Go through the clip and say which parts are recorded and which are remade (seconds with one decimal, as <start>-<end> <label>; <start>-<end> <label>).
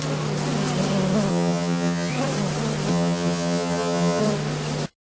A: 0.0-1.3 recorded; 1.3-2.1 remade; 2.1-2.9 recorded; 2.9-4.2 remade; 4.2-5.0 recorded